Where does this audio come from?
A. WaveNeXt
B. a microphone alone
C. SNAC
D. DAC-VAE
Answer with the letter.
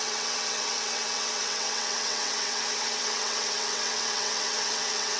A